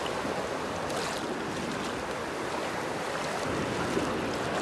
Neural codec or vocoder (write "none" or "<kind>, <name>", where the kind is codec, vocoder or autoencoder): none